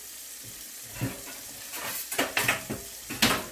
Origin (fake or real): real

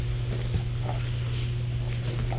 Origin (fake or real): real